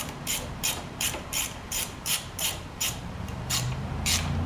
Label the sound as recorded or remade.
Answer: remade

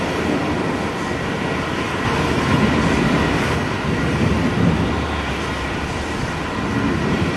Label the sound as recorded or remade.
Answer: remade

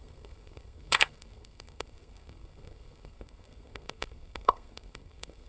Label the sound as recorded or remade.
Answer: remade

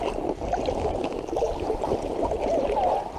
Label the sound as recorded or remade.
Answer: recorded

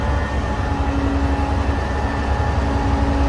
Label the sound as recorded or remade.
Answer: recorded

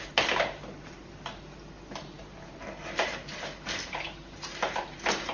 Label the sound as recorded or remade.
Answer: recorded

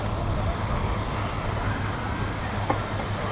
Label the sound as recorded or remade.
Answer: recorded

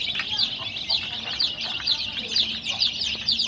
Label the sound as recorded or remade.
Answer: recorded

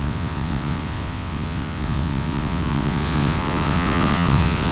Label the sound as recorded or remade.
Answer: remade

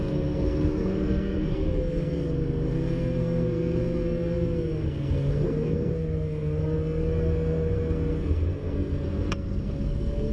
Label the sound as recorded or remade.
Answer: remade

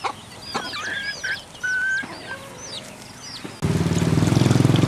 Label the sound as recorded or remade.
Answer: recorded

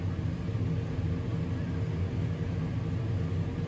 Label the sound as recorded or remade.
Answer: recorded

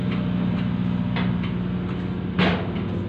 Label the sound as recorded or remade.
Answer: recorded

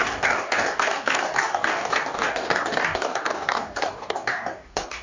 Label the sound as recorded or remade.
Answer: remade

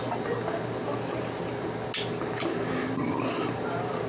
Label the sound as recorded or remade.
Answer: recorded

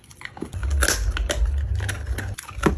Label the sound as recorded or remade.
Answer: recorded